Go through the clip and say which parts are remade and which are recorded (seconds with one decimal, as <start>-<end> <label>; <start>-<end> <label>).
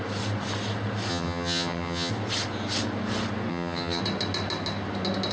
0.0-1.1 recorded; 1.1-2.1 remade; 2.1-3.5 recorded; 3.5-4.0 remade; 4.0-5.3 recorded